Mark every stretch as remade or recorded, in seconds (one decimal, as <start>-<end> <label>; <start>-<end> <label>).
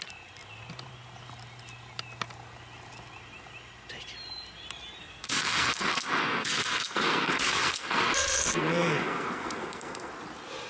0.0-5.0 recorded; 5.0-10.1 remade; 10.1-10.7 recorded